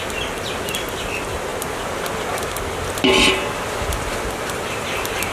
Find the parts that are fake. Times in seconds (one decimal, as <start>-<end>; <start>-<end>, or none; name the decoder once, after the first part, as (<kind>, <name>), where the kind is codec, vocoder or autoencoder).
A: none